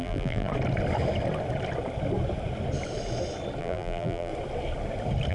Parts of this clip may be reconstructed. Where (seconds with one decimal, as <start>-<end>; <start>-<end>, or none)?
0.0-0.5; 3.6-4.3

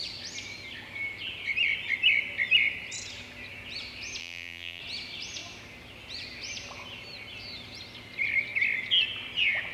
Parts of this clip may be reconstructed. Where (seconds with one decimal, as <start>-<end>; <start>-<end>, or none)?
4.2-4.8

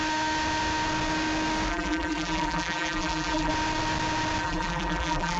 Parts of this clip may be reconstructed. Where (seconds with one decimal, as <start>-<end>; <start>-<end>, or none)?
1.7-3.5; 4.4-5.4

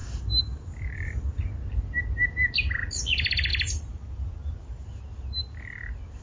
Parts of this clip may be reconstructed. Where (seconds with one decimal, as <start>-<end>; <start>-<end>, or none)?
0.0-1.5; 3.9-4.9

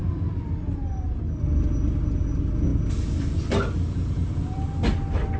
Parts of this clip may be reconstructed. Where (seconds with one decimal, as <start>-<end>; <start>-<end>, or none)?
none